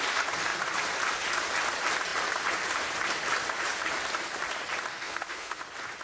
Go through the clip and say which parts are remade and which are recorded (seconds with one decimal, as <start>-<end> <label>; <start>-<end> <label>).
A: 0.0-4.9 recorded; 4.9-5.6 remade; 5.6-6.0 recorded